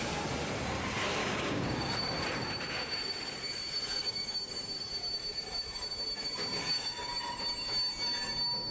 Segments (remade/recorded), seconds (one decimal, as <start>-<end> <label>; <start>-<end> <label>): 0.0-1.2 recorded; 1.2-1.9 remade; 1.9-4.0 recorded; 4.0-4.5 remade; 4.5-6.6 recorded; 6.6-7.1 remade; 7.1-8.7 recorded